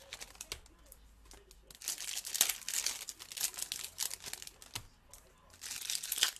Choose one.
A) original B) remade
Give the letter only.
A